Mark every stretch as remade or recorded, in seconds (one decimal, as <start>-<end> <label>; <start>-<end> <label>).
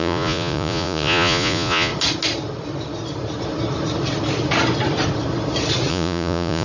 0.0-1.9 remade; 1.9-5.9 recorded; 5.9-6.6 remade